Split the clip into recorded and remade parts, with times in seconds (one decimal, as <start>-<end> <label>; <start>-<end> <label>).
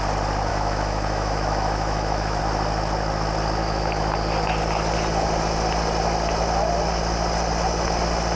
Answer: 0.0-0.5 recorded; 0.5-2.4 remade; 2.4-3.6 recorded; 3.6-4.1 remade; 4.1-8.4 recorded